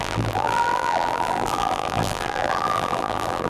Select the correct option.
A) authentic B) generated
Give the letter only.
B